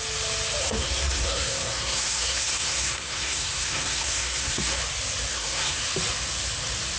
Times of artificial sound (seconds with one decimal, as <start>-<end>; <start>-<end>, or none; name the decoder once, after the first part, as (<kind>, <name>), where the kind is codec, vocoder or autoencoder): 0.6-4.8 (codec, SNAC); 5.3-5.8